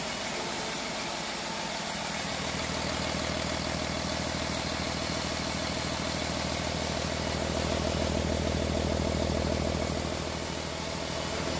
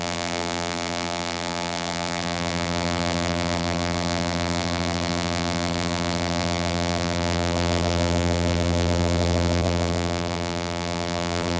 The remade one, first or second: second